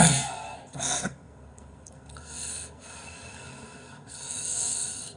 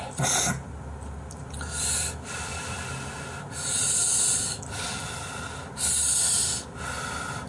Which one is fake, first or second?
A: first